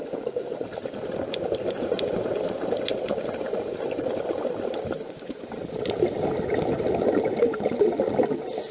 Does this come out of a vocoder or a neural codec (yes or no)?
no